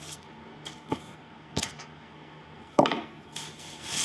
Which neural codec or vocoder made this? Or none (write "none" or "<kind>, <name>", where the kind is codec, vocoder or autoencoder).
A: codec, SNAC